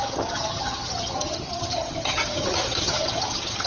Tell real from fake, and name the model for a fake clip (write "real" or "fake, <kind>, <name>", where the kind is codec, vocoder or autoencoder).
fake, vocoder, HiFi-GAN